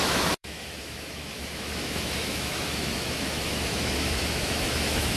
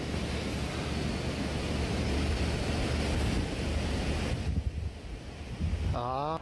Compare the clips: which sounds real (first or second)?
second